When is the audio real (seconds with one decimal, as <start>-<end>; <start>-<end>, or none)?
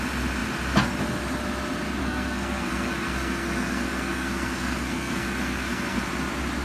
0.0-2.0; 6.0-6.6